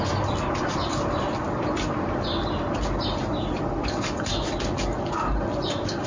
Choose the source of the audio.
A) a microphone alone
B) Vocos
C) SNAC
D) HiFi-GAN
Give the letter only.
A